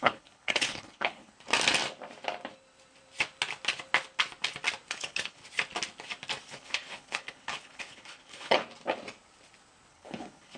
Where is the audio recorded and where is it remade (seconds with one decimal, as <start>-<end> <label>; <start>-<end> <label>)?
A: 0.0-1.3 remade; 1.3-4.9 recorded; 4.9-5.4 remade; 5.4-6.5 recorded; 6.5-8.6 remade; 8.6-9.9 recorded; 9.9-10.6 remade